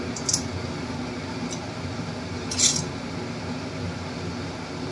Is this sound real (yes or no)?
yes